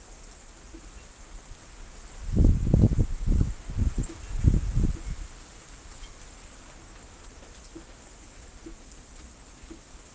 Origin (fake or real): real